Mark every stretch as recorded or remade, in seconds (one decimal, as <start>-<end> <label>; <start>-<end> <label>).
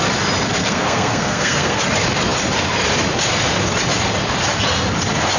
0.0-0.6 recorded; 0.6-1.8 remade; 1.8-5.4 recorded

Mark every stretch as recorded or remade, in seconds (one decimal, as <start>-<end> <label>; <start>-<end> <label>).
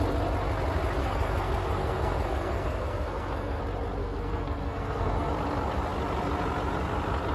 0.0-1.0 recorded; 1.0-3.6 remade; 3.6-4.0 recorded; 4.0-5.3 remade; 5.3-7.3 recorded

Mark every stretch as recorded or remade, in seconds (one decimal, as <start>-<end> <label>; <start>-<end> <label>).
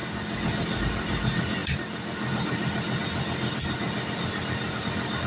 0.0-5.3 recorded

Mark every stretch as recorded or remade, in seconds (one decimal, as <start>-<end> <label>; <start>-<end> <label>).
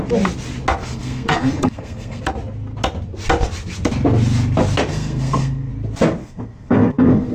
0.0-0.8 recorded; 0.8-2.2 remade; 2.2-4.9 recorded; 4.9-5.7 remade; 5.7-6.2 recorded; 6.2-7.3 remade